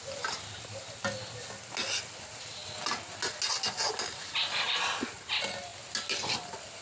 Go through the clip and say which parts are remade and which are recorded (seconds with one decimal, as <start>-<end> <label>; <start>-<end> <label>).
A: 0.0-6.8 recorded